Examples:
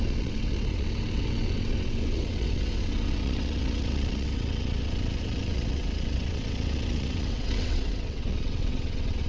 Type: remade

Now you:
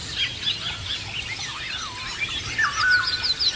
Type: recorded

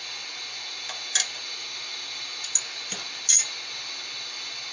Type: recorded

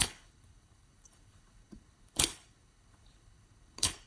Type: remade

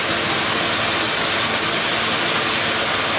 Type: recorded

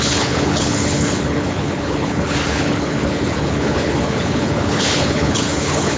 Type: remade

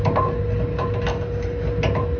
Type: recorded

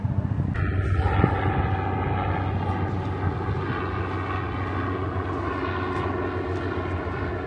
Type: recorded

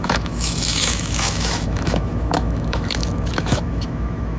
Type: remade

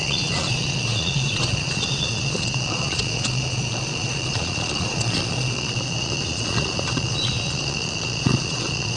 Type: remade